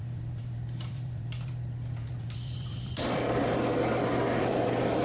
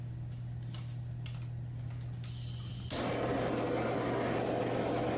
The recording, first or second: second